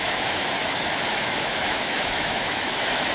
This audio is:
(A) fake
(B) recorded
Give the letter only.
A